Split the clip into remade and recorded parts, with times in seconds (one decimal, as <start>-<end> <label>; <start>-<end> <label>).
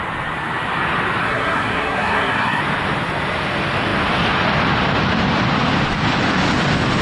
0.0-1.2 recorded; 1.2-2.6 remade; 2.6-7.0 recorded